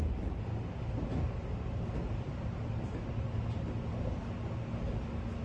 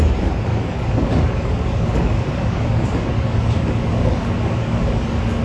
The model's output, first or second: second